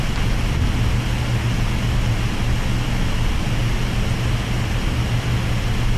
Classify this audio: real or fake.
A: real